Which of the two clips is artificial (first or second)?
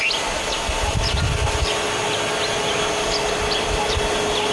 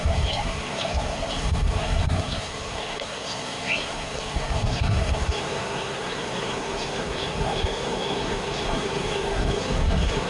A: second